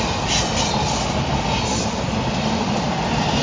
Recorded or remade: recorded